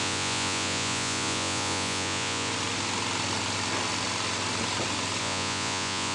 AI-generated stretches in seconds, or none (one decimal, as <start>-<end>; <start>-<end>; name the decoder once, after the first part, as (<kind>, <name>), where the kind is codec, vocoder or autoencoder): 0.0-2.5 (vocoder, Vocos); 5.2-6.1